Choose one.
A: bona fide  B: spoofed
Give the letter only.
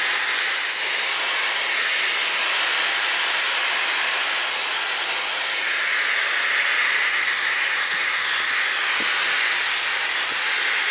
A